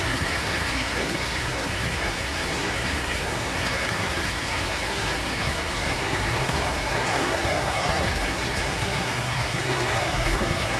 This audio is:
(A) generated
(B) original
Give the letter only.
A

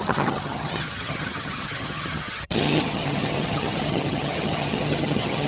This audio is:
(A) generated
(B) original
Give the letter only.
A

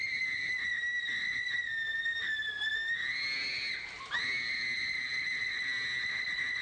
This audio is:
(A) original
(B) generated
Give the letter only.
A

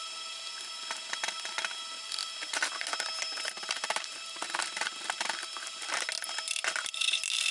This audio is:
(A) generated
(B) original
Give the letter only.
B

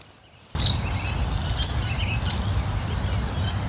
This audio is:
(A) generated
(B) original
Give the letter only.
B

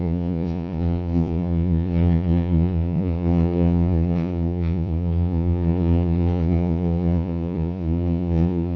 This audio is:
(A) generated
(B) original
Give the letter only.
A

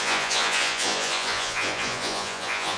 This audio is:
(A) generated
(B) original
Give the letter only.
A